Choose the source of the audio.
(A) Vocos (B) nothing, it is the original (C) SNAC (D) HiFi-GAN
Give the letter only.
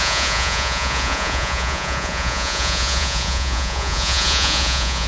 A